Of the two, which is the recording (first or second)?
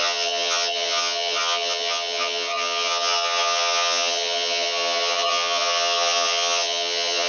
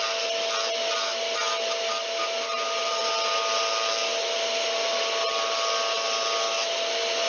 second